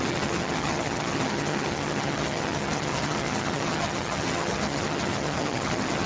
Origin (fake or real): fake